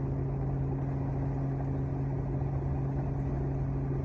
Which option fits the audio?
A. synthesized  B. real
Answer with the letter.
B